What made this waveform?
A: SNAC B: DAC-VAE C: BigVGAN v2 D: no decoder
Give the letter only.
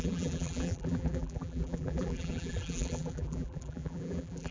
C